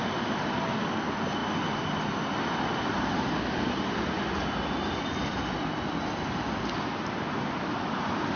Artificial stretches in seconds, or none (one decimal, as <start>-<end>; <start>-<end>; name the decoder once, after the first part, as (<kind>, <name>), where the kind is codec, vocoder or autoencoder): none